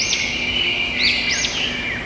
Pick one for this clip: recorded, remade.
recorded